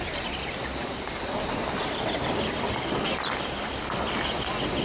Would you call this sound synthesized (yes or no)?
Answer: no